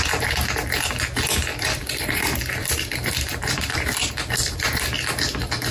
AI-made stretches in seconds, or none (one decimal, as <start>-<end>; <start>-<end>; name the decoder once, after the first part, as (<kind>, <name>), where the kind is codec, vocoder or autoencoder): 1.5-4.1 (vocoder, BigVGAN v2)